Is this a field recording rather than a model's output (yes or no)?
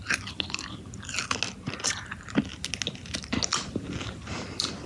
yes